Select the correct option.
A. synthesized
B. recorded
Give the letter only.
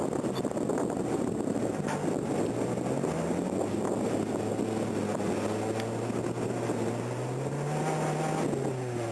B